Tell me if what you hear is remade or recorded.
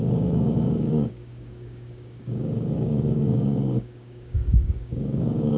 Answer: remade